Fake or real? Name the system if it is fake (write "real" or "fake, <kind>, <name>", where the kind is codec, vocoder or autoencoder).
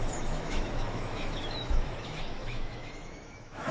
fake, autoencoder, DAC-VAE